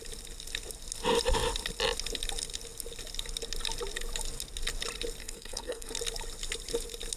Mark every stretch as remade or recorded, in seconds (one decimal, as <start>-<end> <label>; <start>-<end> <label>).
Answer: 0.0-5.2 recorded; 5.2-5.9 remade; 5.9-7.2 recorded